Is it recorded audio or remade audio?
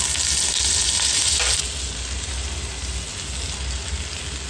recorded